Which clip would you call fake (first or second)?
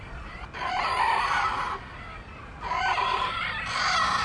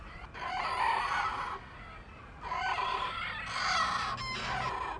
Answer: first